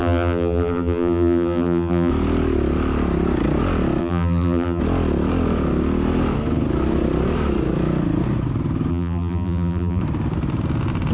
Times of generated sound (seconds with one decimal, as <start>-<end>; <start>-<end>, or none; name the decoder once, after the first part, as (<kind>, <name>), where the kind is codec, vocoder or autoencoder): 0.0-2.1 (vocoder, BigVGAN v2); 4.0-4.8; 8.9-10.0